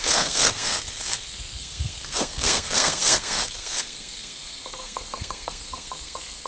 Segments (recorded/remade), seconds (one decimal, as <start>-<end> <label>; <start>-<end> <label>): 0.0-6.5 remade